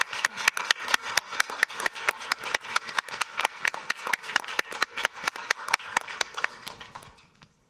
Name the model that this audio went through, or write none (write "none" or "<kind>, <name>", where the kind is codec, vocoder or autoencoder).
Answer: codec, SNAC